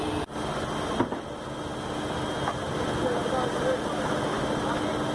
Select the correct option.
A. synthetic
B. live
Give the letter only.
B